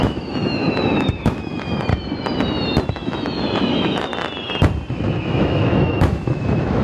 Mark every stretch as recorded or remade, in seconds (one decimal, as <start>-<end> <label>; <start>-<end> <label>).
0.0-1.9 remade; 1.9-2.9 recorded; 2.9-4.1 remade; 4.1-4.9 recorded; 4.9-6.8 remade